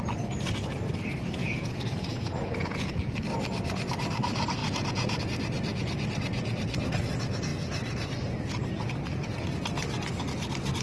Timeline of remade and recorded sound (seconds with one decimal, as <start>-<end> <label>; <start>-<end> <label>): 0.0-1.4 recorded; 1.4-3.1 remade; 3.1-4.6 recorded; 4.6-5.2 remade; 5.2-10.8 recorded